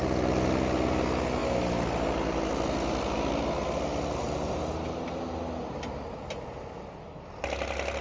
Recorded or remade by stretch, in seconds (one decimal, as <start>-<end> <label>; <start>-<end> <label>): 0.0-8.0 recorded